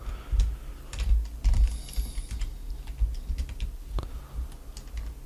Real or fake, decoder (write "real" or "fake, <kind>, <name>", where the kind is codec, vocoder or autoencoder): real